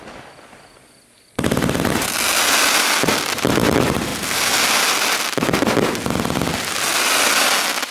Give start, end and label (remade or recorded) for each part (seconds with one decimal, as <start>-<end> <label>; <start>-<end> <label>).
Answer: 0.0-7.9 recorded